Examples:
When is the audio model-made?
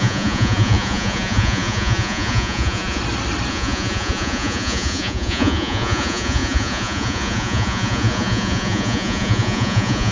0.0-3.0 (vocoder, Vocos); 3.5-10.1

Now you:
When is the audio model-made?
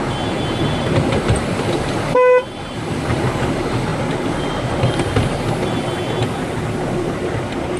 3.9-6.2 (vocoder, BigVGAN v2)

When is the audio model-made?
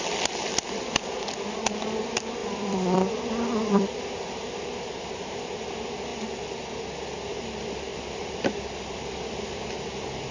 2.4-4.5 (vocoder, BigVGAN v2); 6.1-6.7; 7.9-9.5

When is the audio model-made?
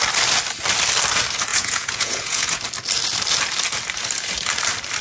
1.5-2.6 (vocoder, Vocos)